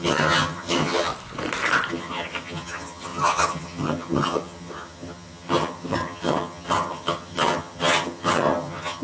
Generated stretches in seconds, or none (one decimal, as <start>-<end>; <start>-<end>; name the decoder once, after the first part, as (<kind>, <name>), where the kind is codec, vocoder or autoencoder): 0.0-1.1 (vocoder, HiFi-GAN); 1.9-9.0